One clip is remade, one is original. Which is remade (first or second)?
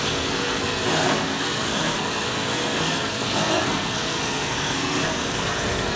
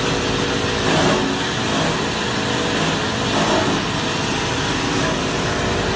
first